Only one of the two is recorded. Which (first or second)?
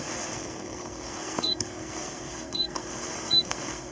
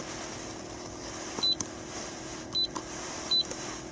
second